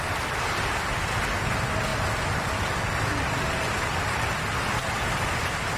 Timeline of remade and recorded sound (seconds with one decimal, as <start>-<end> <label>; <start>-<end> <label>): 0.0-5.8 recorded